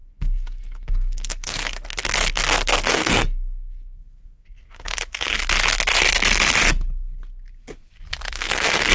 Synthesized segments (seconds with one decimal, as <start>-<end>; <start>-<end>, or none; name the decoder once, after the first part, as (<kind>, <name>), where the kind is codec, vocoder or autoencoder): 0.0-4.9 (codec, SNAC); 8.3-8.9